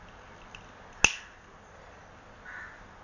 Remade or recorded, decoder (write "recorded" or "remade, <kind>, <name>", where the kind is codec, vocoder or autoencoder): recorded